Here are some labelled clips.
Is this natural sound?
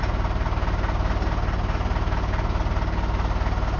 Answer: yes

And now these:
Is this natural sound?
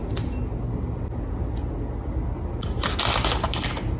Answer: yes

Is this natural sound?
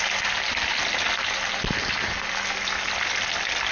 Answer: yes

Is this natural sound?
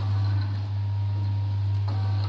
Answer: yes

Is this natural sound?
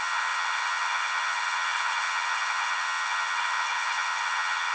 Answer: no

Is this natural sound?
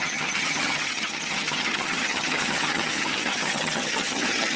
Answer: no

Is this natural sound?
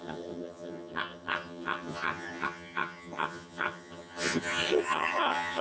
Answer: no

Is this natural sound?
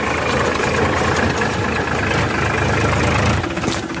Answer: yes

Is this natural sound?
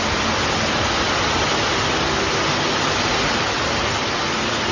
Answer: yes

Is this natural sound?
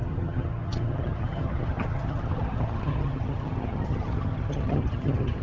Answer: no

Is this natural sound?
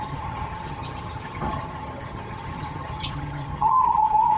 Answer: no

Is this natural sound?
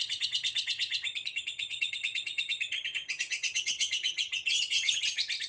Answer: no